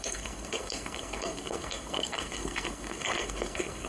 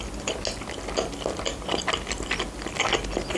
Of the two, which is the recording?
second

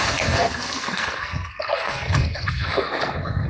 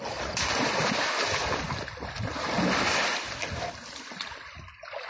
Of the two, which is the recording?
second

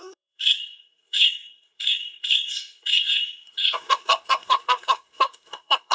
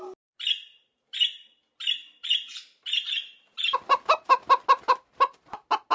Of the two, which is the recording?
second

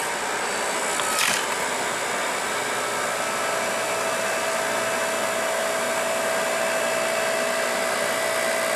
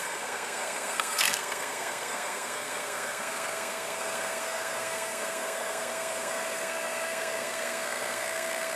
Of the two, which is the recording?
first